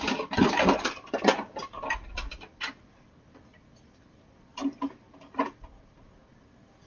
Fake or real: real